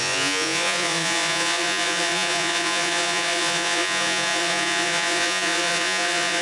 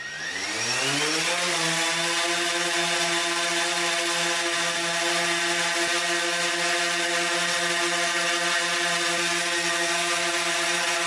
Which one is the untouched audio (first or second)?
second